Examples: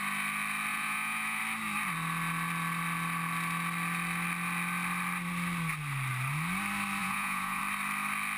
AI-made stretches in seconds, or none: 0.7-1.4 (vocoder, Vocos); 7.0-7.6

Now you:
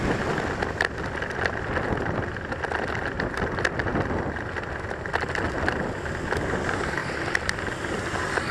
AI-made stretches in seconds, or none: none

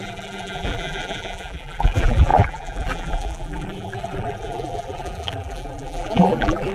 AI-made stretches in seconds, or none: 0.0-6.7 (vocoder, BigVGAN v2)

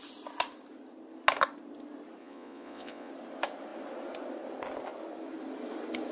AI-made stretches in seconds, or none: 2.2-3.1 (vocoder, Vocos)

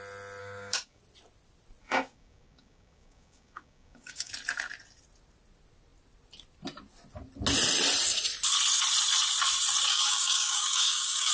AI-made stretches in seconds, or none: 0.4-1.0 (codec, DAC); 1.8-4.3; 9.9-11.3

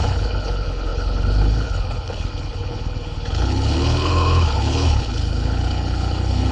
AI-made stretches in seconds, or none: 0.0-6.5 (codec, HILCodec)

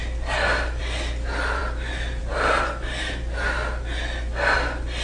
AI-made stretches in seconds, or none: none

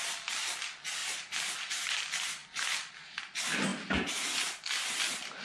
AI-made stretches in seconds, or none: none